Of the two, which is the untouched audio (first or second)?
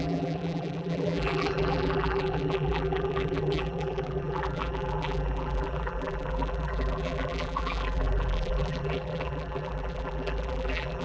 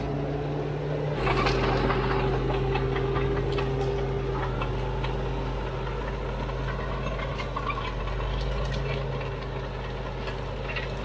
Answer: second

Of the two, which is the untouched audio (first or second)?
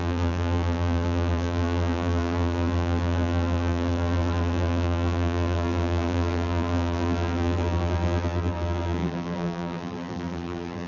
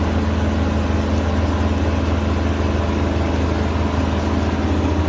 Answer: second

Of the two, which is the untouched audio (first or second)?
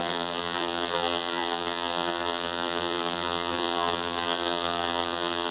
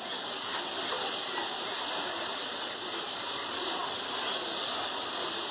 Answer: second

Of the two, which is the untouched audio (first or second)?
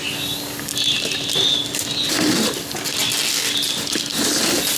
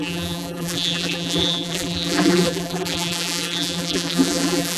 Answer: first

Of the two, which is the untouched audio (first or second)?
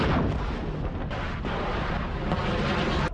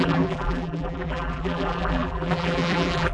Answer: first